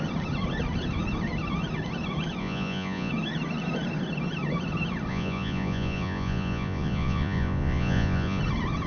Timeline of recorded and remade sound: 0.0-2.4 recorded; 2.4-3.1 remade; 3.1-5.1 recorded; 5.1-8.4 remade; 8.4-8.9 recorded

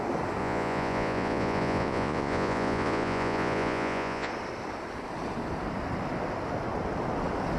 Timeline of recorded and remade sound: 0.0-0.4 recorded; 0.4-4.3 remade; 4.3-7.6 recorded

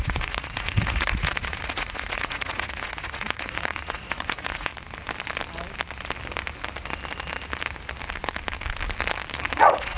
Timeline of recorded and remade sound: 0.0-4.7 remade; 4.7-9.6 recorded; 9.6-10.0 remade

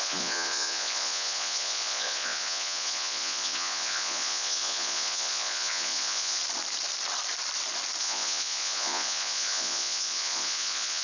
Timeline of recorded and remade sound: 0.0-6.4 remade; 6.4-8.0 recorded; 8.0-11.0 remade

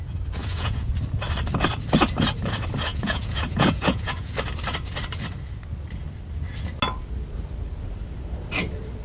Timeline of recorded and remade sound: 0.0-0.4 recorded; 0.4-0.9 remade; 0.9-2.9 recorded; 2.9-4.3 remade; 4.3-9.0 recorded

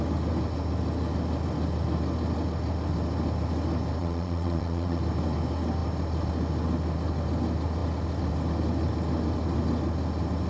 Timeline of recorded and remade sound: 0.0-4.0 recorded; 4.0-5.0 remade; 5.0-10.5 recorded